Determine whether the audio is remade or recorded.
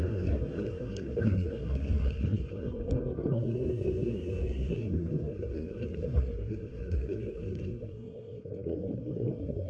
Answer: remade